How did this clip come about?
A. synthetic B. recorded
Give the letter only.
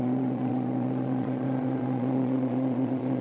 A